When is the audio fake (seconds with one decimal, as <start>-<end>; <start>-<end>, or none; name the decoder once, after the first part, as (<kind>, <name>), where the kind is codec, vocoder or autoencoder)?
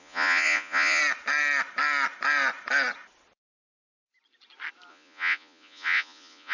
0.0-1.0 (vocoder, Vocos); 4.9-6.5